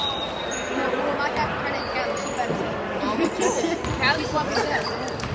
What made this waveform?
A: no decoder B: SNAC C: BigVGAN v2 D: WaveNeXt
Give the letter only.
A